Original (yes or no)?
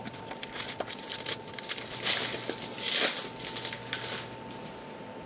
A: yes